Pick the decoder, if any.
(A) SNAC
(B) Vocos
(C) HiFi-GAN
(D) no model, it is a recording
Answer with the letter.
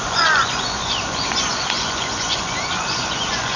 B